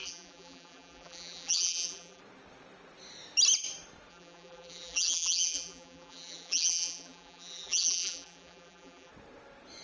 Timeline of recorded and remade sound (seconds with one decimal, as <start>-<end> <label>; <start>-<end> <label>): 0.0-2.2 remade; 2.2-4.1 recorded; 4.1-9.1 remade; 9.1-9.8 recorded